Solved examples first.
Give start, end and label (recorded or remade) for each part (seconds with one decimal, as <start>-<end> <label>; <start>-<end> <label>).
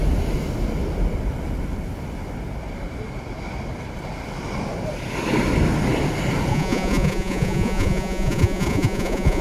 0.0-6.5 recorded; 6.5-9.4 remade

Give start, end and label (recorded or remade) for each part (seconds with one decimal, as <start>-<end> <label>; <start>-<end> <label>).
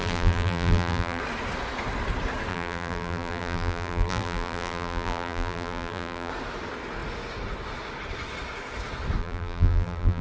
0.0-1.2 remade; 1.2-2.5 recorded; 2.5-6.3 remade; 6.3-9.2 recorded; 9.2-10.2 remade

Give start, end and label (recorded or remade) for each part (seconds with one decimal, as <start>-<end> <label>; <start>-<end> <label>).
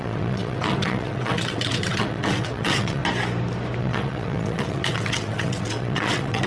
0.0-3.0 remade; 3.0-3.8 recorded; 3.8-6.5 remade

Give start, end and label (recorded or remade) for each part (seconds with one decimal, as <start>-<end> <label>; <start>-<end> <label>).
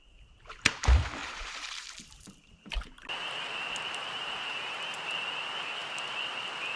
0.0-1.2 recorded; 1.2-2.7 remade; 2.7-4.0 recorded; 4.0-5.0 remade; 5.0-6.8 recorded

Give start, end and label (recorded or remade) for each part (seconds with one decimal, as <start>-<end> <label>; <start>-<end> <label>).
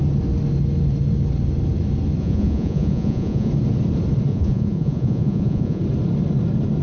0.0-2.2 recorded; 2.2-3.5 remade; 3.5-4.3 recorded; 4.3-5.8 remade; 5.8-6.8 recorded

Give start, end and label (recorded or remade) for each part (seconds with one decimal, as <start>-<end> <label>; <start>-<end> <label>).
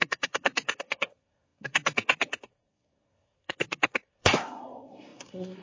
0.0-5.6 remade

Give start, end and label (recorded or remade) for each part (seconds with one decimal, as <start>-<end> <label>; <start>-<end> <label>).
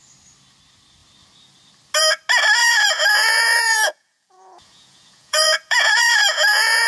0.0-2.6 recorded; 2.6-6.9 remade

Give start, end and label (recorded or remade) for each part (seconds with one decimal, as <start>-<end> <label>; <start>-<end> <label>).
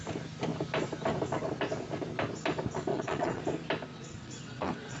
0.0-2.9 recorded; 2.9-3.4 remade; 3.4-3.9 recorded; 3.9-5.0 remade